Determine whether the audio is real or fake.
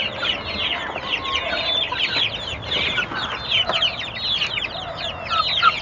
real